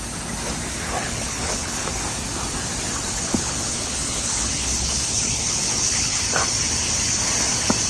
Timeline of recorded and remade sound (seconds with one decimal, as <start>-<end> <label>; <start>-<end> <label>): 0.0-1.0 recorded; 1.0-1.9 remade; 1.9-3.1 recorded; 3.1-6.2 remade; 6.2-7.9 recorded